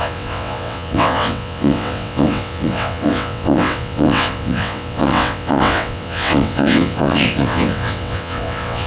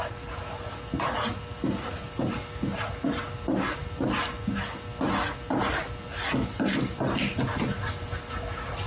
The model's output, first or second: first